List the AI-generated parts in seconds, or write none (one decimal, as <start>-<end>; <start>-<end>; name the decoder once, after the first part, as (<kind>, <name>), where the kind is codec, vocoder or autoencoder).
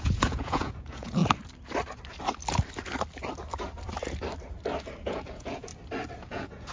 0.0-1.2 (vocoder, Vocos); 5.0-5.7; 6.2-6.7